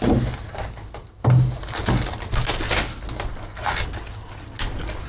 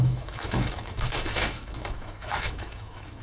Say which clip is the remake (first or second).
second